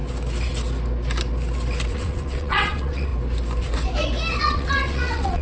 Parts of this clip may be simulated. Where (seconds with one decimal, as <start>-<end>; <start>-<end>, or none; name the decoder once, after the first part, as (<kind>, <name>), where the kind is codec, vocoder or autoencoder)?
1.9-3.1 (vocoder, WaveNeXt); 4.4-5.4